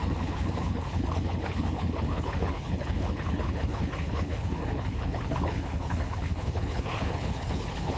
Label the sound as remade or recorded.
remade